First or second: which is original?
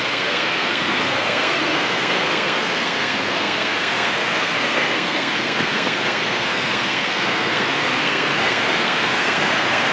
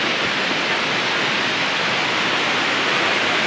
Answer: second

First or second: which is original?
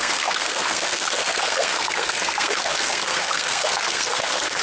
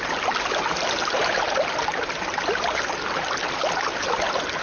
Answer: second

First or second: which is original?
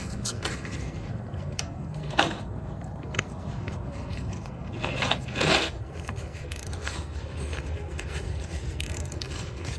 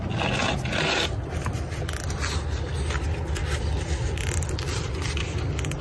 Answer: second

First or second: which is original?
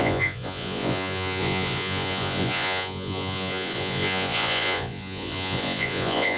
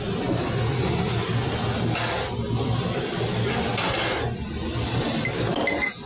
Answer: second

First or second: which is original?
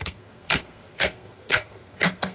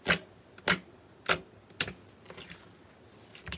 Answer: second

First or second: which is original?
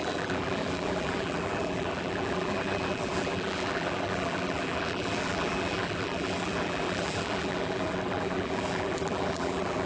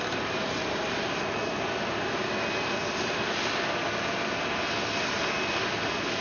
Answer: second